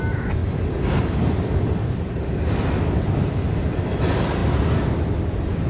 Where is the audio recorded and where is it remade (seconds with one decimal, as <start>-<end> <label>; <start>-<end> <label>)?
0.0-5.7 recorded

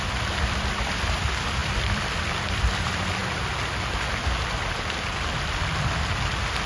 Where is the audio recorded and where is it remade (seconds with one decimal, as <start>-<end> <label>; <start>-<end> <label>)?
0.0-3.2 remade; 3.2-6.7 recorded

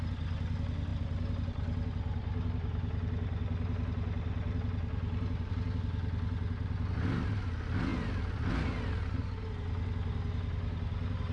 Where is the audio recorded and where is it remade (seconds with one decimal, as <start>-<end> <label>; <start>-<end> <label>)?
0.0-11.3 recorded

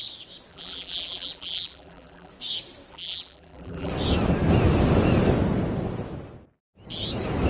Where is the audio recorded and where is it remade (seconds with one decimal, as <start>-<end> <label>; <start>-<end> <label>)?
0.0-0.5 recorded; 0.5-2.3 remade; 2.3-2.9 recorded; 2.9-3.9 remade; 3.9-7.5 recorded

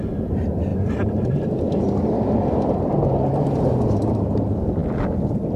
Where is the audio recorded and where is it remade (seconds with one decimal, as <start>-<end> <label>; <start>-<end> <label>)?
0.0-5.6 remade

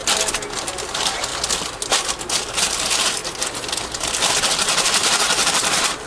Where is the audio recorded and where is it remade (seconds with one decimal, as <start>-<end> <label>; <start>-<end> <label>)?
0.0-0.8 recorded; 0.8-1.3 remade; 1.3-2.3 recorded; 2.3-3.2 remade; 3.2-3.8 recorded; 3.8-6.1 remade

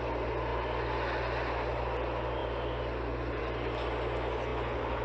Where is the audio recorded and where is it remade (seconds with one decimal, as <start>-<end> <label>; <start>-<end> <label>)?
0.0-5.0 recorded